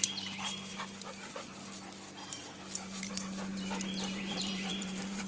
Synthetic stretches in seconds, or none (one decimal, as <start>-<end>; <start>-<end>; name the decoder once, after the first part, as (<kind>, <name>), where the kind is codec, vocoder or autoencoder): 0.0-5.3 (vocoder, BigVGAN v2)